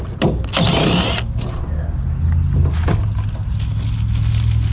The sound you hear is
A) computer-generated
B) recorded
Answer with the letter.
B